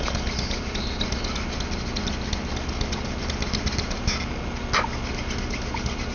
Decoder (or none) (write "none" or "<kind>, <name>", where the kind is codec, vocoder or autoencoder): none